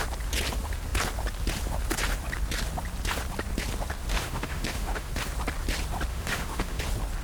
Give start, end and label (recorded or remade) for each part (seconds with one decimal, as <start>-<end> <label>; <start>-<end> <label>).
0.0-4.1 recorded; 4.1-5.1 remade; 5.1-6.1 recorded; 6.1-6.8 remade; 6.8-7.2 recorded